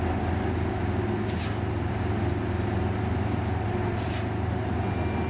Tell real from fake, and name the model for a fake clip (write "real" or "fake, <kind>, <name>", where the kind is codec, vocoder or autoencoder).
real